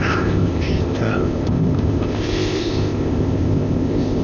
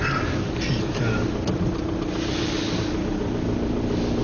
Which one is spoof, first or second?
first